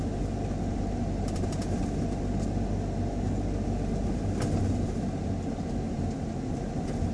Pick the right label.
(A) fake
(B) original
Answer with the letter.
B